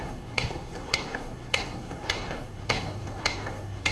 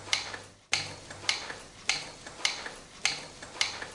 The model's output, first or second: first